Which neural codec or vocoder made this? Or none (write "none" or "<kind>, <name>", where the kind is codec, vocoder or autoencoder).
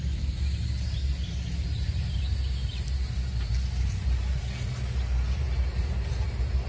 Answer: none